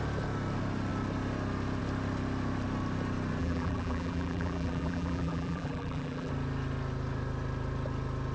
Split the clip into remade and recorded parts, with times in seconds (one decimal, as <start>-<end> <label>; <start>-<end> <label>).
0.0-3.4 recorded; 3.4-6.3 remade; 6.3-8.3 recorded

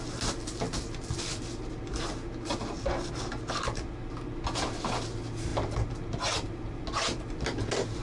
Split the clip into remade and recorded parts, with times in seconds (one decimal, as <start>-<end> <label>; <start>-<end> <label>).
0.0-8.0 recorded

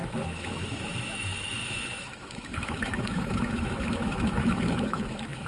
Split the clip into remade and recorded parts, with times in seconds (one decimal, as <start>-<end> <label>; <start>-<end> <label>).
0.0-5.5 remade

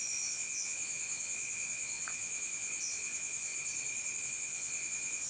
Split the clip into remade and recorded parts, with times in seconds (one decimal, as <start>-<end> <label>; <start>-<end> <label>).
0.0-3.5 remade; 3.5-4.2 recorded; 4.2-5.3 remade

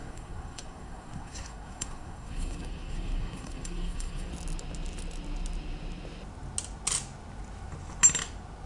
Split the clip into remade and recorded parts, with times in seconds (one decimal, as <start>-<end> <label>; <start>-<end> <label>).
0.0-4.3 remade; 4.3-8.7 recorded

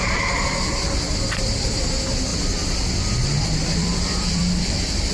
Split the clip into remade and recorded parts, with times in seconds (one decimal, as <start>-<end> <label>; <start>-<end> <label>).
0.0-0.7 recorded; 0.7-1.6 remade; 1.6-3.8 recorded; 3.8-5.1 remade